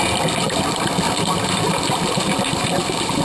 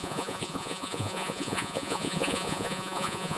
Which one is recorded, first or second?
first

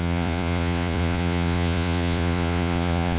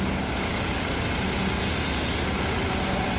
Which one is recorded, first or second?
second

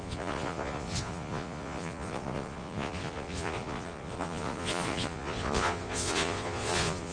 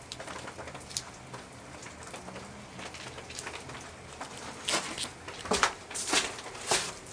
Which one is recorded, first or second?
second